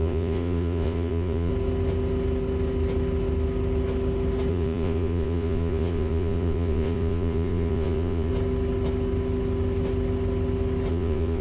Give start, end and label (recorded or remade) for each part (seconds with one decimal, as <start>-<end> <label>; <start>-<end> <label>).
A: 0.0-1.5 remade; 1.5-4.5 recorded; 4.5-8.3 remade; 8.3-10.9 recorded; 10.9-11.4 remade